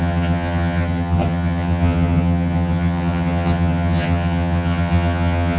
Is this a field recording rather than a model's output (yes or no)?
no